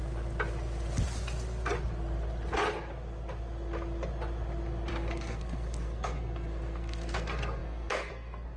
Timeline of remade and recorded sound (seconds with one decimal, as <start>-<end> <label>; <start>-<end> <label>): 0.0-4.9 recorded; 4.9-8.6 remade